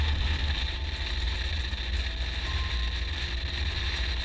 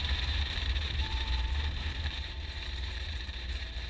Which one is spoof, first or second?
second